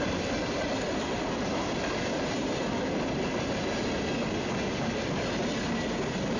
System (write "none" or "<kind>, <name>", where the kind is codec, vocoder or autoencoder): none